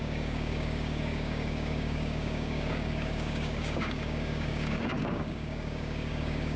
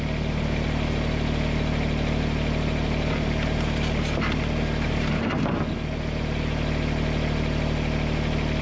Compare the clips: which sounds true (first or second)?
second